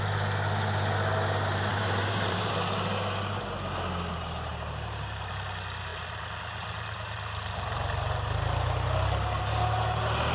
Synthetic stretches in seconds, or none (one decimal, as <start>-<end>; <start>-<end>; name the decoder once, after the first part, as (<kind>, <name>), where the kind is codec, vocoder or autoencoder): 1.7-2.5 (vocoder, BigVGAN v2); 4.5-5.3

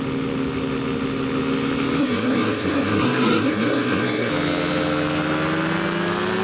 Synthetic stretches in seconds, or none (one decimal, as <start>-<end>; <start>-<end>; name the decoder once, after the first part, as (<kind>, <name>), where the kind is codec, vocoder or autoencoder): 2.0-4.3 (codec, SNAC)

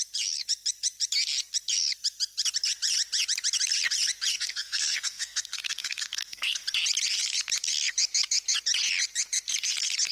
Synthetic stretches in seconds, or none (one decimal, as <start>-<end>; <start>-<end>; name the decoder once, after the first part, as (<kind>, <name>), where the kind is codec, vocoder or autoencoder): 4.3-6.6 (codec, SNAC)

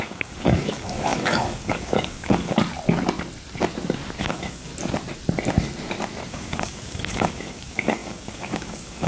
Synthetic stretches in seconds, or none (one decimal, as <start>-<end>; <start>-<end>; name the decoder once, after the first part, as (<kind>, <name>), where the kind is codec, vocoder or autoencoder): 0.0-2.6 (codec, DAC); 4.2-4.7; 6.3-9.1

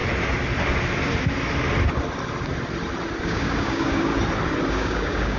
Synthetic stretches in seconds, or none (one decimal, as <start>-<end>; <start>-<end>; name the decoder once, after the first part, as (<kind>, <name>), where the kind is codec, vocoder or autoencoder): 3.2-4.1 (codec, DAC); 4.7-5.4

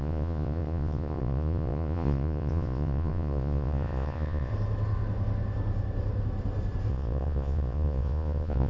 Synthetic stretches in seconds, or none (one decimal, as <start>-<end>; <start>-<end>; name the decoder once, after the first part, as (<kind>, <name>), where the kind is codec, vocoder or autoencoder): 0.0-4.5 (vocoder, Vocos); 6.9-8.7

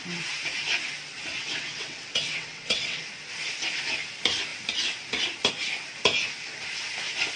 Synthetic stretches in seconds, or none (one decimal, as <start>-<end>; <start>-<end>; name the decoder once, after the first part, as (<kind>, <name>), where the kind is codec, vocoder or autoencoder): 1.3-3.0 (vocoder, WaveNeXt)

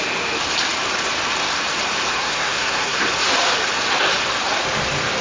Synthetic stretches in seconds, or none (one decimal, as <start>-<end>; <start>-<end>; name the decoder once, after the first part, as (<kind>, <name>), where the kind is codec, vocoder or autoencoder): 2.2-3.0 (codec, SNAC)